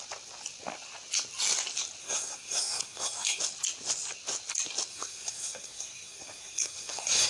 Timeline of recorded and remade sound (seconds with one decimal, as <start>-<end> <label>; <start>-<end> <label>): 0.0-2.0 recorded; 2.0-3.4 remade; 3.4-4.9 recorded; 4.9-7.3 remade